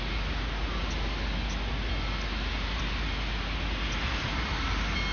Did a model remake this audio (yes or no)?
no